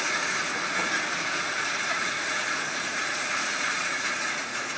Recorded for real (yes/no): no